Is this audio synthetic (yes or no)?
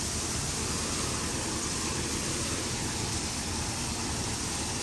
yes